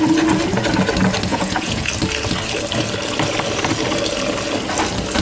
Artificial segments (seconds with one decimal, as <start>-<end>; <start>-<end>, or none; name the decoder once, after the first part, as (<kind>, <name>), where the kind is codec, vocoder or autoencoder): 1.3-1.9 (vocoder, Vocos)